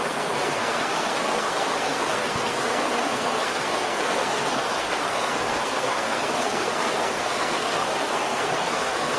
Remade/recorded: remade